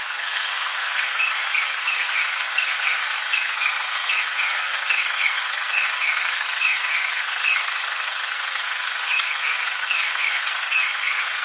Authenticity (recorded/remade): remade